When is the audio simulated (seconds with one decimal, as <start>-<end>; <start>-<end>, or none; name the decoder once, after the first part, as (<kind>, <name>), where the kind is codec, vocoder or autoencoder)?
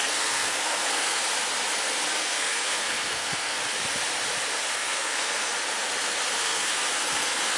0.0-1.2 (codec, SNAC); 2.1-3.6; 4.7-5.5; 6.4-7.6